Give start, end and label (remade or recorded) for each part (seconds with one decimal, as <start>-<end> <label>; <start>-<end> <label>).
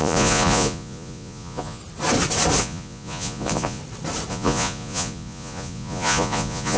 0.0-1.8 remade; 1.8-2.6 recorded; 2.6-3.8 remade; 3.8-4.3 recorded; 4.3-6.8 remade